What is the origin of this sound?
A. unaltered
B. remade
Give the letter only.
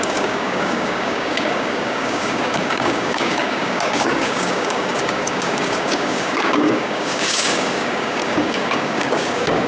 B